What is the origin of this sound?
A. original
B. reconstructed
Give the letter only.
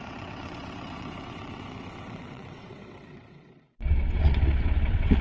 B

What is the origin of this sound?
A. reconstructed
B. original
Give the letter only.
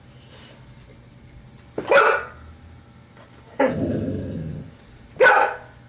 B